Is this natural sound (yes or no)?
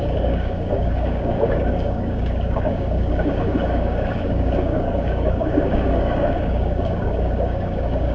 no